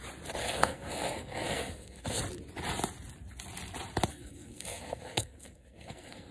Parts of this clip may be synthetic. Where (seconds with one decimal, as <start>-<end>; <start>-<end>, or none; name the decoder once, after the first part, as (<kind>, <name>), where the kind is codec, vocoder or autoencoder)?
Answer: 0.4-2.2 (codec, SNAC); 4.1-6.3